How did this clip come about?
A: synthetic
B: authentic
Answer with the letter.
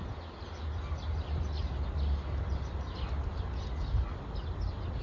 B